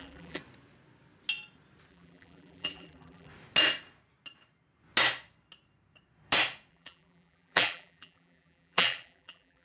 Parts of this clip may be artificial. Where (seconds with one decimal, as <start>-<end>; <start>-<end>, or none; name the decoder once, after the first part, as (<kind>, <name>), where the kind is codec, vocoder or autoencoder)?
0.0-0.4 (vocoder, BigVGAN v2); 1.9-3.3; 6.7-9.6